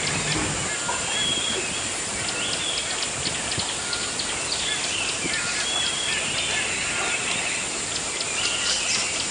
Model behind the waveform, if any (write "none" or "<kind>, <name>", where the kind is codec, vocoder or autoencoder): none